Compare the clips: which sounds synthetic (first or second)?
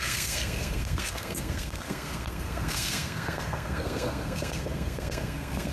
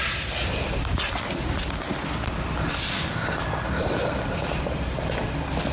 first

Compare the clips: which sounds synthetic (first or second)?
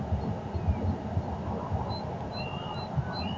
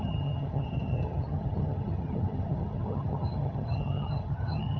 second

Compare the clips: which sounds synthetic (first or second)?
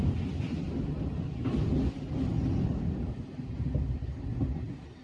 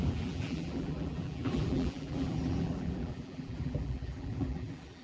second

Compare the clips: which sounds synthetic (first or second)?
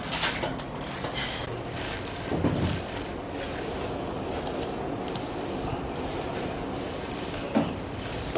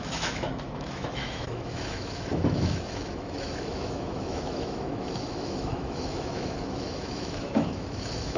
second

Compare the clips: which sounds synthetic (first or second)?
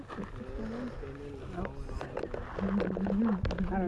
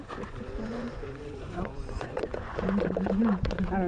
second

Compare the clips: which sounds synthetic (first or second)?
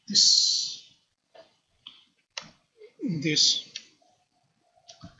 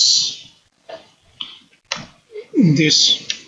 first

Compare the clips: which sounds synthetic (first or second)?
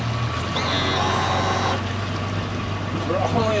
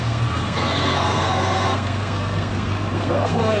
second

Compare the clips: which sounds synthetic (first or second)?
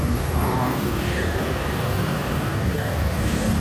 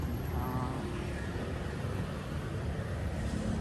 first